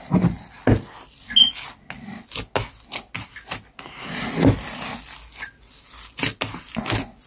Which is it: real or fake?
real